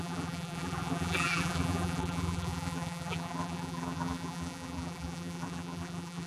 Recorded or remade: remade